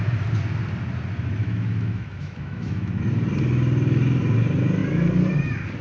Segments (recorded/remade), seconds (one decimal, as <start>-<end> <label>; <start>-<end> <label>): 0.0-1.4 recorded; 1.4-3.0 remade; 3.0-5.8 recorded